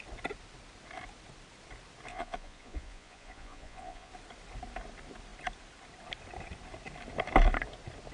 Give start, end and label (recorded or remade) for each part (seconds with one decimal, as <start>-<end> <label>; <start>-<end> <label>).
0.0-2.1 recorded; 2.1-4.1 remade; 4.1-8.1 recorded